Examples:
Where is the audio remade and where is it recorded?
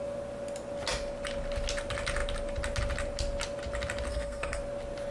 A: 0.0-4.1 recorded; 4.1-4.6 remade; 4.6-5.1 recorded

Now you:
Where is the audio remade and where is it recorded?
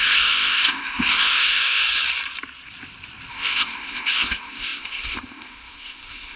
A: 0.0-1.8 remade; 1.8-3.3 recorded; 3.3-6.4 remade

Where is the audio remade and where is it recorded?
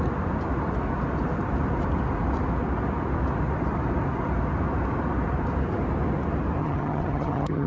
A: 0.0-6.6 recorded; 6.6-7.7 remade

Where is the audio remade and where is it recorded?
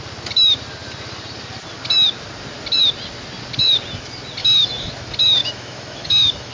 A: 0.0-4.4 recorded; 4.4-4.9 remade; 4.9-5.4 recorded; 5.4-6.5 remade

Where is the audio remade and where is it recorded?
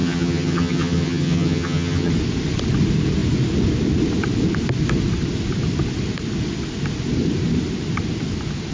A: 0.0-2.1 remade; 2.1-8.7 recorded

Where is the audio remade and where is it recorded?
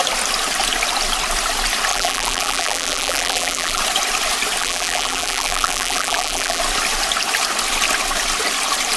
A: 0.0-1.9 recorded; 1.9-3.8 remade; 3.8-4.6 recorded; 4.6-6.6 remade; 6.6-9.0 recorded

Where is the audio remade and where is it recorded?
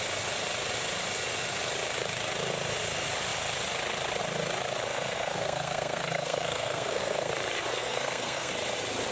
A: 0.0-4.9 recorded; 4.9-7.3 remade; 7.3-7.8 recorded; 7.8-8.5 remade; 8.5-9.1 recorded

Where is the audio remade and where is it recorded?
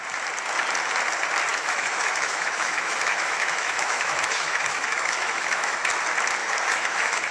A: 0.0-1.5 recorded; 1.5-5.9 remade; 5.9-6.4 recorded; 6.4-7.3 remade